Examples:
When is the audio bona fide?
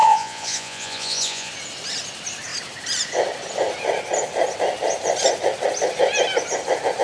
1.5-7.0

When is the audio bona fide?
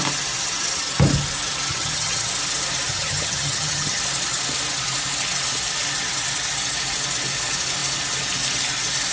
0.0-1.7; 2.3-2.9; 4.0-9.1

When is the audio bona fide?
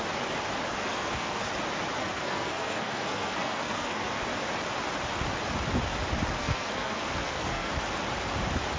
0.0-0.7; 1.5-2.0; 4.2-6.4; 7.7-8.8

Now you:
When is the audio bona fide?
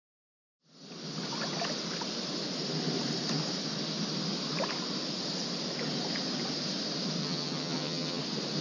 0.0-7.2; 8.2-8.6